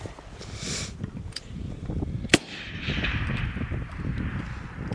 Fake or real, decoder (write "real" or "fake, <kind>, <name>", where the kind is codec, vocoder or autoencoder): fake, vocoder, BigVGAN v2